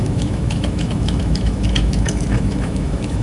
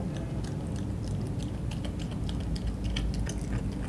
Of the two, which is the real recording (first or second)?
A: second